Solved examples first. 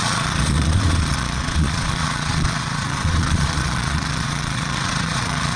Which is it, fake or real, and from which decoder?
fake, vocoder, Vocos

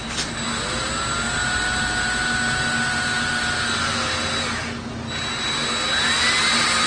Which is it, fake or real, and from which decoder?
real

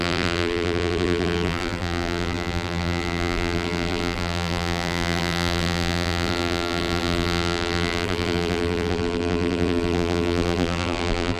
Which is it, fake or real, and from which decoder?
fake, vocoder, BigVGAN v2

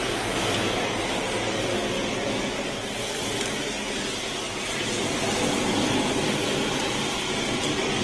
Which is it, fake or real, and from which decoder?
real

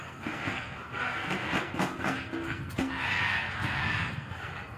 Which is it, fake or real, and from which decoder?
fake, codec, SNAC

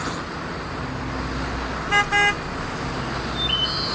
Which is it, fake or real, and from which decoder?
real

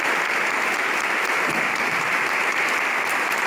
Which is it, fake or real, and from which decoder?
real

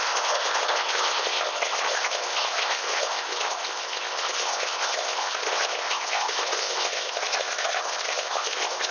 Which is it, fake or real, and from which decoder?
fake, codec, ZipCodec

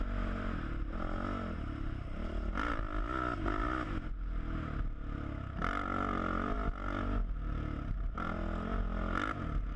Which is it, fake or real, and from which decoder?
real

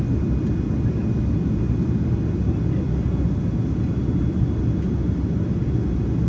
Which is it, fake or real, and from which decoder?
real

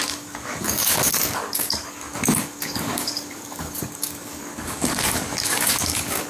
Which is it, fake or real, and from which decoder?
fake, codec, DAC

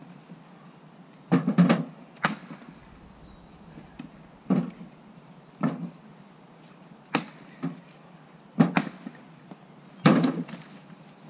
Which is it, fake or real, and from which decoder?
real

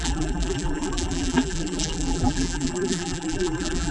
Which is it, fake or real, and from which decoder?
fake, vocoder, BigVGAN v2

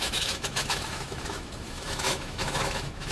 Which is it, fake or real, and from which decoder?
fake, autoencoder, DAC-VAE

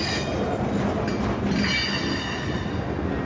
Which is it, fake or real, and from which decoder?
real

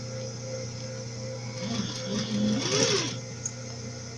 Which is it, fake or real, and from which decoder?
real